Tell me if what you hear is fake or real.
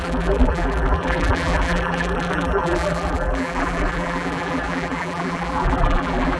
fake